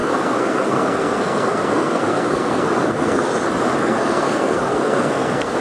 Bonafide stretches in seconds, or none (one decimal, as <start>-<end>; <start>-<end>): 3.3-3.8